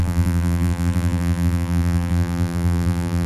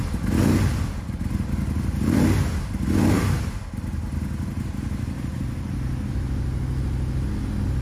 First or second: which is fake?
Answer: first